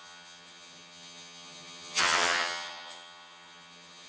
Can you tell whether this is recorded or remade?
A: remade